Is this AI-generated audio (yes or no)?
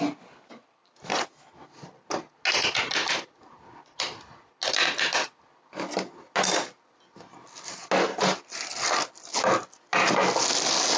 no